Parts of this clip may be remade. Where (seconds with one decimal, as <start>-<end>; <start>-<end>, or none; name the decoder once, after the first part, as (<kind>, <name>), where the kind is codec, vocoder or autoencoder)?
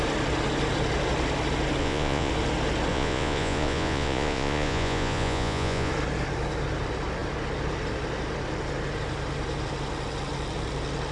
1.8-2.3 (vocoder, Vocos); 2.9-5.9